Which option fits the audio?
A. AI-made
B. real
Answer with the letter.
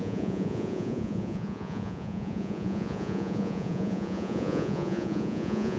A